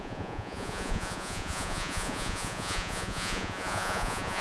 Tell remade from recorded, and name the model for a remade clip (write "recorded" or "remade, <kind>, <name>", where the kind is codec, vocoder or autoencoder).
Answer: remade, vocoder, Vocos